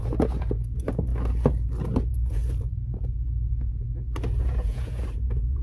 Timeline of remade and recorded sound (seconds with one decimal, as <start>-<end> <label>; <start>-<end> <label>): 0.0-1.1 remade; 1.1-2.0 recorded; 2.0-2.4 remade; 2.4-4.4 recorded; 4.4-5.6 remade

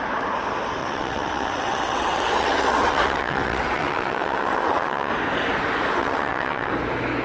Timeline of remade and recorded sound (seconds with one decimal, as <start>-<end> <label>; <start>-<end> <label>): 0.0-0.8 recorded; 0.8-5.1 remade; 5.1-6.0 recorded; 6.0-6.7 remade; 6.7-7.2 recorded

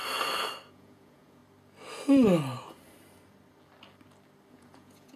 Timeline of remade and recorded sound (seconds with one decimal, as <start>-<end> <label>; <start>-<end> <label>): 0.0-0.7 recorded; 0.7-1.4 remade; 1.4-4.5 recorded; 4.5-5.2 remade

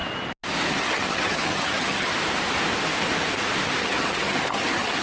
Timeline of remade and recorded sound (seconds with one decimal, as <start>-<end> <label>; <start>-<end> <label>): 0.0-0.7 recorded; 0.7-2.1 remade; 2.1-3.8 recorded; 3.8-5.0 remade

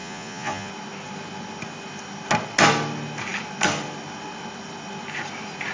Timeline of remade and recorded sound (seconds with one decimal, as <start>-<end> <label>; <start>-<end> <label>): 0.0-0.7 remade; 0.7-5.7 recorded

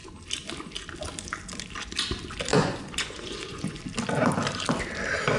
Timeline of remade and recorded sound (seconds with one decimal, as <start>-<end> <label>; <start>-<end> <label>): 0.0-2.5 recorded; 2.5-3.8 remade; 3.8-5.4 recorded

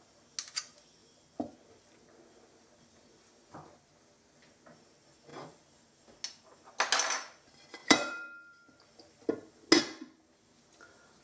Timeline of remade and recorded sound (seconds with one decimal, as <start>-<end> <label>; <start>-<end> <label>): 0.0-1.0 recorded; 1.0-1.5 remade; 1.5-7.8 recorded; 7.8-8.8 remade; 8.8-11.2 recorded